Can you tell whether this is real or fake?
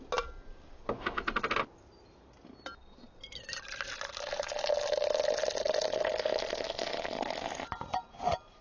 real